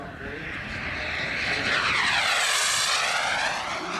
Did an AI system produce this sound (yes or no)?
no